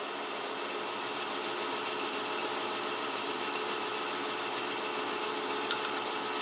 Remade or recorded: recorded